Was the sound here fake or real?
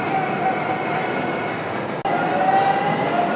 real